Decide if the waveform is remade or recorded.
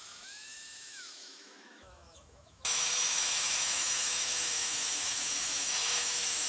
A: remade